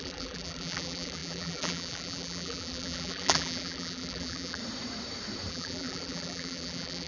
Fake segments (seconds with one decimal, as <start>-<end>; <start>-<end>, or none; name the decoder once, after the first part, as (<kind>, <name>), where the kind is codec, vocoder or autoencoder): 0.0-4.6 (vocoder, BigVGAN v2); 5.5-7.1